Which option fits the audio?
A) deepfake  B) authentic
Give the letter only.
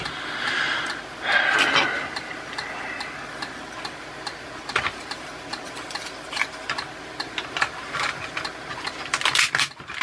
B